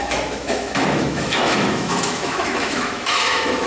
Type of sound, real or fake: fake